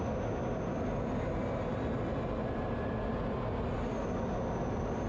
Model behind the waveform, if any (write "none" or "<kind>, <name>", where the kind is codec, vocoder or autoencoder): none